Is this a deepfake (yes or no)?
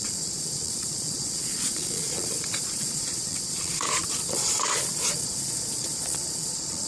yes